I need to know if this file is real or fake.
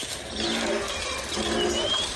real